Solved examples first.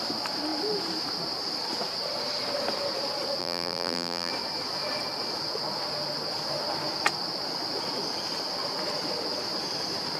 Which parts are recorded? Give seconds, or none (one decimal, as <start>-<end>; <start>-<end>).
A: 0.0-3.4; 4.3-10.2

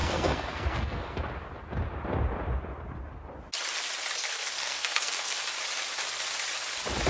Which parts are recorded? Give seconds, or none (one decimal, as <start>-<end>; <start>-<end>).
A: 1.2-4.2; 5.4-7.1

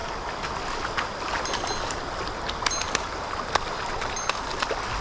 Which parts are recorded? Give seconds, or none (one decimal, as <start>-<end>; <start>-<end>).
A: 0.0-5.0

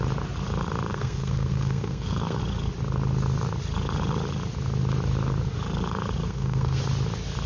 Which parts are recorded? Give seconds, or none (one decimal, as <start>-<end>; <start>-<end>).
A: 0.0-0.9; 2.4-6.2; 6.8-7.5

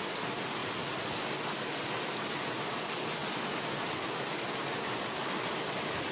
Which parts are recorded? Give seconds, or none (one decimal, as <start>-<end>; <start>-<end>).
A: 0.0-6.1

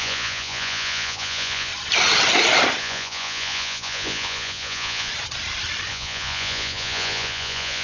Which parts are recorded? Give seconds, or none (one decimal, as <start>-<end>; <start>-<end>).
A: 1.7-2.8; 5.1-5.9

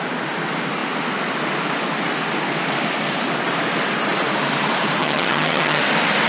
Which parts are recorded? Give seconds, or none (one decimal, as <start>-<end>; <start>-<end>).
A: 0.0-5.0; 5.8-6.3